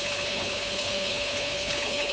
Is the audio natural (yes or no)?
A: no